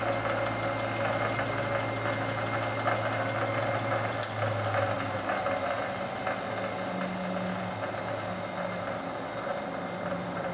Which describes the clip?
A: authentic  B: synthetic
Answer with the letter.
A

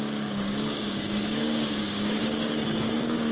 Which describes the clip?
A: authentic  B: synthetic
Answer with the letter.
B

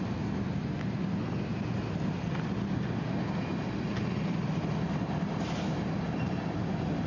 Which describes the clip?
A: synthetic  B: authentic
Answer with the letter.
B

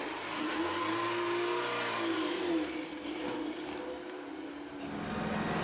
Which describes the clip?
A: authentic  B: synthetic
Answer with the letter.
A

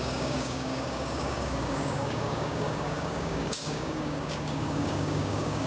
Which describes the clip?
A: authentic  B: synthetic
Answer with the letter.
B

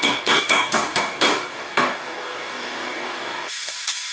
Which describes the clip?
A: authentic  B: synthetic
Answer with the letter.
B